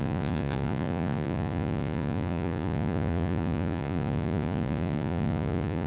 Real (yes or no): no